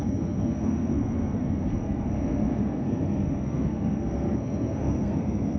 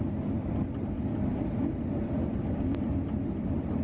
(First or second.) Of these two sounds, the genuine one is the second